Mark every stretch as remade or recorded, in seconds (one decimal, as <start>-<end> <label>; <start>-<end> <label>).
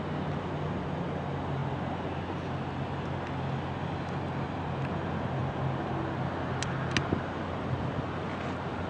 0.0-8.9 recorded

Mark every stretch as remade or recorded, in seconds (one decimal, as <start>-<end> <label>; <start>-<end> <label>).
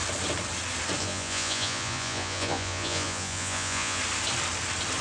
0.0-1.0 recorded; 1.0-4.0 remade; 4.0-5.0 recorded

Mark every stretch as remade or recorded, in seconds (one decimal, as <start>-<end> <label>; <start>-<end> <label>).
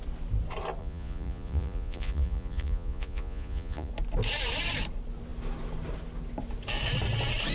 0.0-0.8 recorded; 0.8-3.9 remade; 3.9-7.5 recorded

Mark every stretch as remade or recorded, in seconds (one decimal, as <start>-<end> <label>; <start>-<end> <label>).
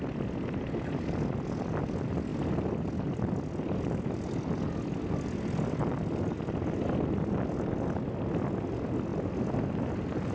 0.0-10.3 recorded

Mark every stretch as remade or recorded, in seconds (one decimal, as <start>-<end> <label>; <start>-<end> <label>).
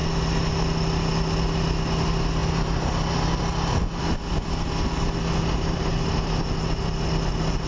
0.0-7.7 recorded